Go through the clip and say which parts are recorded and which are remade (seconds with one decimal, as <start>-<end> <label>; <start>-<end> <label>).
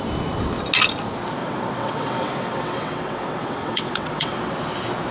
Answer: 0.0-1.4 recorded; 1.4-4.5 remade; 4.5-5.1 recorded